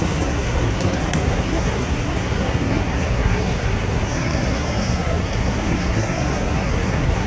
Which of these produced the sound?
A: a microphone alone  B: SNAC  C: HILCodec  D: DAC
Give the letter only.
B